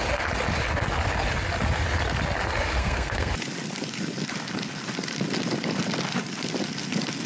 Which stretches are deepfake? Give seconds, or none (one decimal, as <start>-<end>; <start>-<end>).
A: 2.8-3.3